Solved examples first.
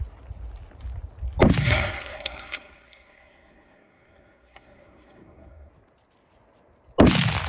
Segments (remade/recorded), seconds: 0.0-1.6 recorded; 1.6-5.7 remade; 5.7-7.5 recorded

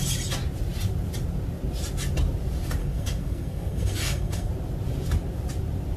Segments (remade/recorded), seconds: 0.0-2.8 recorded; 2.8-4.5 remade; 4.5-6.0 recorded

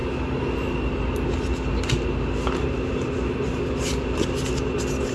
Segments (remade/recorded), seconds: 0.0-5.1 recorded

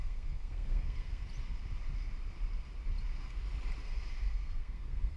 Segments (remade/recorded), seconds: 0.0-1.2 remade; 1.2-4.2 recorded; 4.2-5.2 remade

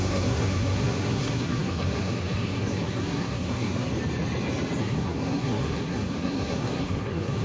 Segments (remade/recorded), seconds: 0.0-3.9 remade; 3.9-4.8 recorded; 4.8-7.4 remade

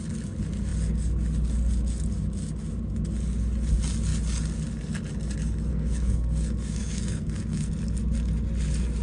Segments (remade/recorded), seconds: 0.0-5.7 recorded; 5.7-7.7 remade; 7.7-9.0 recorded

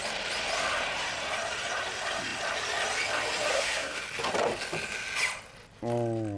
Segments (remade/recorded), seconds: 0.0-3.5 recorded; 3.5-4.0 remade; 4.0-6.4 recorded

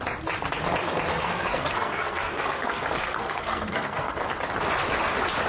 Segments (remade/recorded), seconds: 0.0-1.1 recorded; 1.1-4.2 remade; 4.2-5.5 recorded